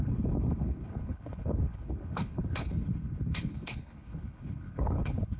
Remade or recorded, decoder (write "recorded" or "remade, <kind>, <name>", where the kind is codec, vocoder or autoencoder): remade, codec, HILCodec